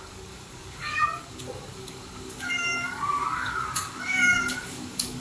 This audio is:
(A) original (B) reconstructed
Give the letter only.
B